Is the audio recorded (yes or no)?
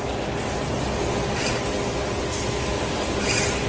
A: yes